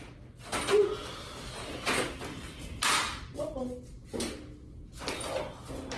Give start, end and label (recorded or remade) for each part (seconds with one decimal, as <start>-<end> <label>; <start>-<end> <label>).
0.0-6.0 recorded